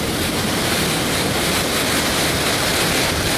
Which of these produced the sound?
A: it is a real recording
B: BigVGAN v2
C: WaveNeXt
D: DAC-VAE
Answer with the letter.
B